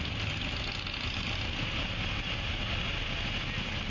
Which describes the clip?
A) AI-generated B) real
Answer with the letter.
B